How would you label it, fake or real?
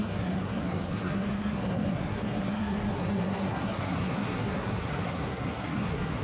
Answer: fake